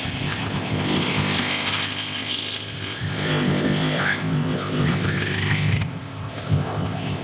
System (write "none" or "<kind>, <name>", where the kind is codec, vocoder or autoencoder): codec, ZipCodec